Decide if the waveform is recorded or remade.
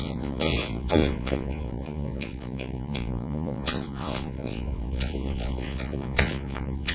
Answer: remade